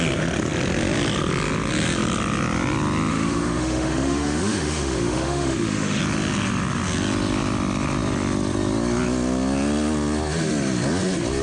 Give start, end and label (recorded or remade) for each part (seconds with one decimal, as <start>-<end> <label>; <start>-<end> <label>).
0.0-3.1 recorded; 3.1-6.0 remade; 6.0-11.4 recorded